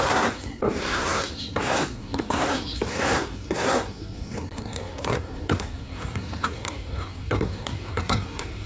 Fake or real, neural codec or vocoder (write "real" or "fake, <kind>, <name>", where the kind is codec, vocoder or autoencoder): fake, codec, SNAC